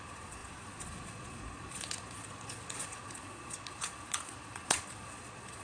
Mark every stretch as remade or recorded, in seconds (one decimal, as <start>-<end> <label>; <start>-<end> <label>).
0.0-5.6 remade